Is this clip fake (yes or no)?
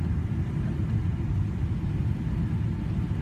no